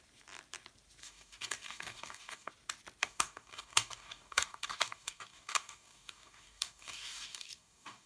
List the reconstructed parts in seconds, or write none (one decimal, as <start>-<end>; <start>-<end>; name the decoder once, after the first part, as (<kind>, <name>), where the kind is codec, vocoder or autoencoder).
1.0-2.5 (codec, DAC); 3.0-8.1